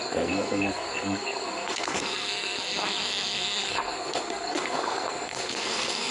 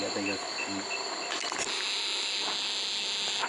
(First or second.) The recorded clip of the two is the second